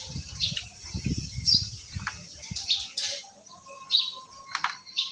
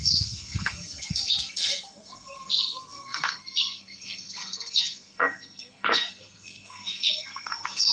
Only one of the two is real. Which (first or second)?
first